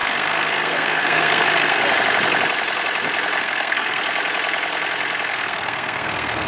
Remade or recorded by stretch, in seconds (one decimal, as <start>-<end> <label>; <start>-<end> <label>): 0.0-1.8 remade; 1.8-3.4 recorded; 3.4-4.0 remade; 4.0-5.3 recorded; 5.3-6.5 remade